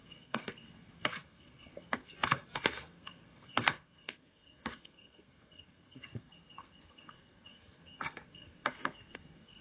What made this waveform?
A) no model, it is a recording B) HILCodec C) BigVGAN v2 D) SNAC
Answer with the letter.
D